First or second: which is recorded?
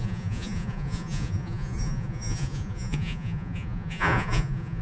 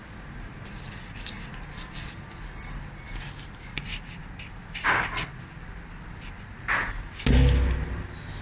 second